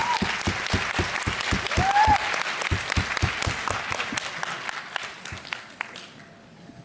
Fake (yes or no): no